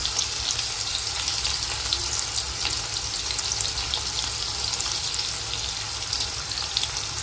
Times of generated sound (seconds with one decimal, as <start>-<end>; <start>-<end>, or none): none